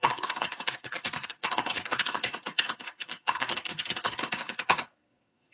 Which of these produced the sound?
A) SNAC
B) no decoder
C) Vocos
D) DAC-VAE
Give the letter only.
A